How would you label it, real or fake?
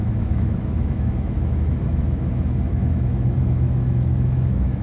fake